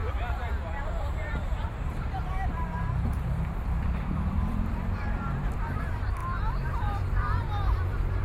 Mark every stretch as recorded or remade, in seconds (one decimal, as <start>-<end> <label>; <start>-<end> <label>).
0.0-8.2 remade